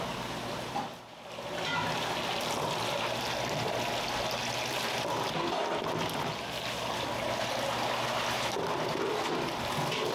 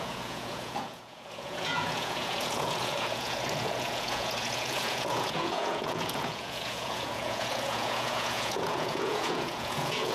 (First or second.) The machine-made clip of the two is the second